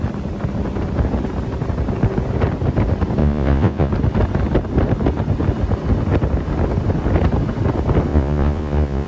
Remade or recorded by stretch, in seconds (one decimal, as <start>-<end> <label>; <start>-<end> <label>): 0.0-3.2 recorded; 3.2-3.9 remade; 3.9-8.1 recorded; 8.1-9.1 remade